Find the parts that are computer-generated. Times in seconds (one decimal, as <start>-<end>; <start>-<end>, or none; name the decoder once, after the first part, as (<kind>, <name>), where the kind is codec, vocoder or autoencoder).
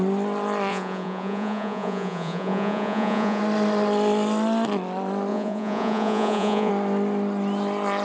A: 0.7-3.4 (vocoder, Vocos); 5.3-6.7